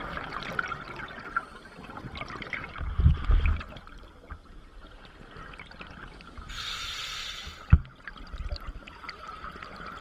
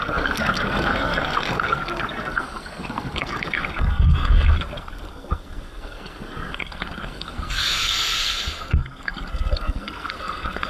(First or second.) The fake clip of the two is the second